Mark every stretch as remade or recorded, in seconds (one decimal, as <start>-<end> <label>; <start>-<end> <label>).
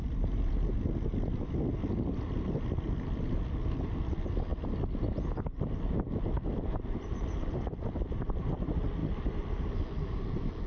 0.0-10.7 recorded